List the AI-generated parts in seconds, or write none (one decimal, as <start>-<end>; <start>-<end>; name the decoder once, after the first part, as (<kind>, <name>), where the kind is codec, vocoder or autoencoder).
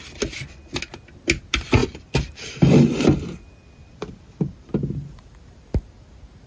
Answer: 0.0-0.8 (vocoder, BigVGAN v2); 1.8-5.7